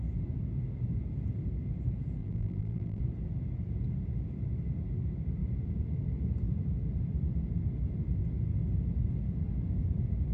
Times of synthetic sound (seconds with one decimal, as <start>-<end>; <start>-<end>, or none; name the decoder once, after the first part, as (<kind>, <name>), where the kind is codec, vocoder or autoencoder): 2.2-3.0 (vocoder, BigVGAN v2)